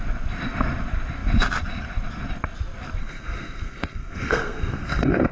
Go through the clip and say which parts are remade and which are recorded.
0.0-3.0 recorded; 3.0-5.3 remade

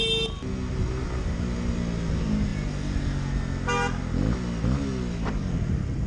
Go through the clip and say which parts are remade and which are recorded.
0.0-6.1 recorded

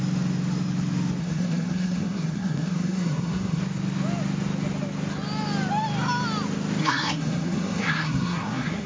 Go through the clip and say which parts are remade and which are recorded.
0.0-1.2 recorded; 1.2-3.6 remade; 3.6-6.8 recorded; 6.8-8.9 remade

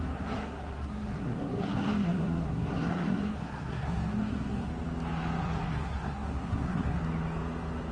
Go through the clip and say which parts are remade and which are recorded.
0.0-4.7 remade; 4.7-5.4 recorded; 5.4-7.0 remade; 7.0-7.9 recorded

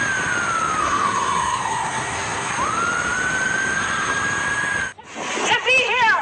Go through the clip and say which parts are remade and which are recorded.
0.0-0.8 recorded; 0.8-2.5 remade; 2.5-6.2 recorded

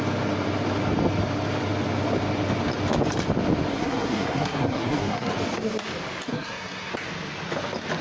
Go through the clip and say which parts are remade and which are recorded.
0.0-3.7 recorded; 3.7-5.3 remade; 5.3-6.3 recorded; 6.3-6.9 remade; 6.9-8.0 recorded

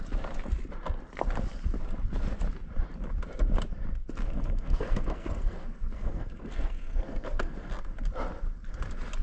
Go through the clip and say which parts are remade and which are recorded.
0.0-4.2 recorded; 4.2-7.7 remade; 7.7-9.2 recorded